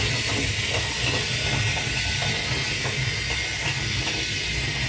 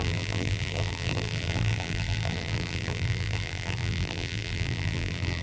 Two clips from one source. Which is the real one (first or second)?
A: first